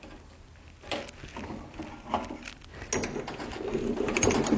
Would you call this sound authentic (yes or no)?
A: yes